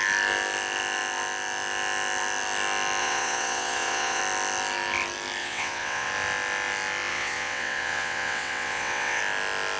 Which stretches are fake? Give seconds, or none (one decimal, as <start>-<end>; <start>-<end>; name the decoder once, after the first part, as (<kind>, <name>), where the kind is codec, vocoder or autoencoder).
3.0-4.2 (vocoder, WaveNeXt); 5.4-6.1; 7.1-9.2